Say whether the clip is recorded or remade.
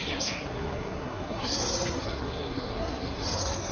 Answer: remade